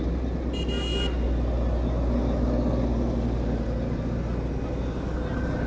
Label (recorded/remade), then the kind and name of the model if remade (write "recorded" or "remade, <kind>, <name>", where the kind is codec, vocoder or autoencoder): recorded